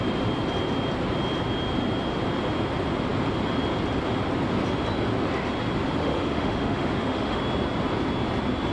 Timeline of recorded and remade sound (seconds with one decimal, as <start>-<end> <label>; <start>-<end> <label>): 0.0-6.0 recorded; 6.0-7.4 remade; 7.4-8.7 recorded